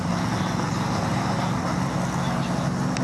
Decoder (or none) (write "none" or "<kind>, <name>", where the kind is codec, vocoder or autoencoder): none